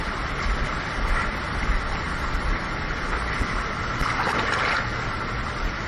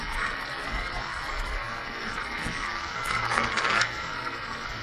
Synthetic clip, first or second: second